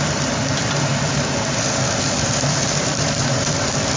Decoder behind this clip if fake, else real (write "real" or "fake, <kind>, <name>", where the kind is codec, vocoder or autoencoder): fake, vocoder, BigVGAN v2